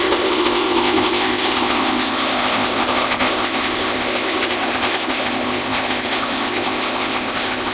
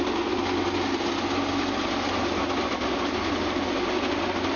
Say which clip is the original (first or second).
second